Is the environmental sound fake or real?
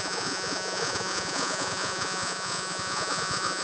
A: fake